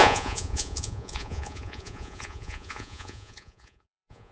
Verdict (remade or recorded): remade